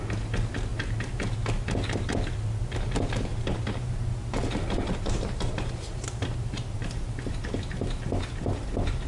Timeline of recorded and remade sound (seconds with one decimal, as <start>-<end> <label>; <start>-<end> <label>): 0.0-3.3 recorded; 3.3-7.2 remade; 7.2-9.1 recorded